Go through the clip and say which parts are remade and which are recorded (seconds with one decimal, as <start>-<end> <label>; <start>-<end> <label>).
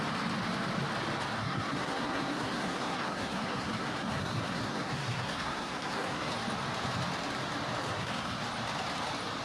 0.0-1.4 recorded; 1.4-6.3 remade; 6.3-7.8 recorded; 7.8-8.4 remade; 8.4-9.4 recorded